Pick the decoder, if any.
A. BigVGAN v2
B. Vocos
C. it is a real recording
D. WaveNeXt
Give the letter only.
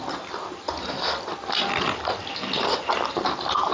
C